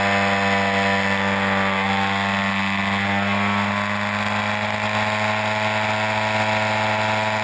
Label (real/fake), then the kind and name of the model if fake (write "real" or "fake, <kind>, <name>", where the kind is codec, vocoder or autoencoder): real